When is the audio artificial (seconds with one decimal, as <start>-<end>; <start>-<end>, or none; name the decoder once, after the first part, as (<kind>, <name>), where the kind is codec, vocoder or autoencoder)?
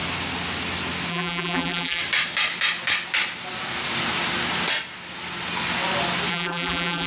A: 1.1-2.0 (vocoder, BigVGAN v2); 6.3-7.1